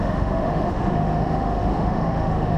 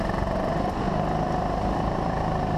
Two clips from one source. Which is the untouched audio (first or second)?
second